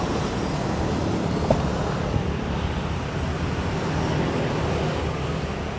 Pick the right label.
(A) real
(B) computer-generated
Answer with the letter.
A